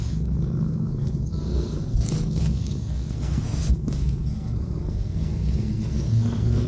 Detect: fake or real fake